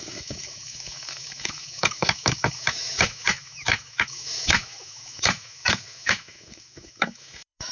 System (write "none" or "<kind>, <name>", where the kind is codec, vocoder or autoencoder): autoencoder, DAC-VAE